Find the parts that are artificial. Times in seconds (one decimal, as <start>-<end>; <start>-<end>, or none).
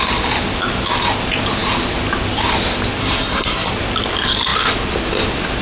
3.0-3.7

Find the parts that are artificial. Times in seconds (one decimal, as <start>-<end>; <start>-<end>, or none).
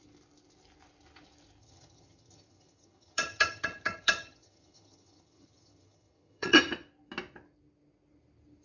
1.6-6.6